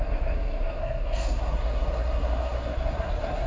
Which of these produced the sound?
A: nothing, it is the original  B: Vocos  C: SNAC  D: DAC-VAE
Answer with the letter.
C